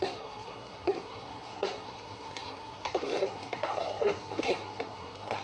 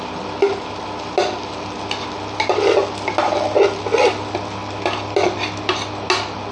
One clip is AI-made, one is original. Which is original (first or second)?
second